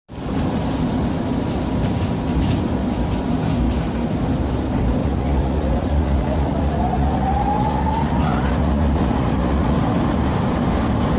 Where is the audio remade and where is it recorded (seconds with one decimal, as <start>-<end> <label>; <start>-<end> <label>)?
0.0-5.0 recorded; 5.0-9.8 remade; 9.8-11.2 recorded